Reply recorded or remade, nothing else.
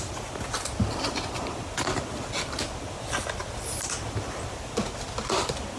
recorded